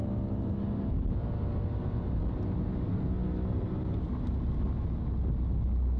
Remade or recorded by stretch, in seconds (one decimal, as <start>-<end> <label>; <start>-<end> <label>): 0.0-2.9 recorded; 2.9-3.7 remade; 3.7-6.0 recorded